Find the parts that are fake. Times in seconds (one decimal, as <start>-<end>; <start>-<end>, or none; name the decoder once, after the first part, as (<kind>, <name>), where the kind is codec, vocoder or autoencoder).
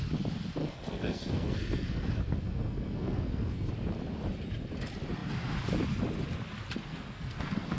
0.6-3.7 (codec, SNAC); 6.9-7.8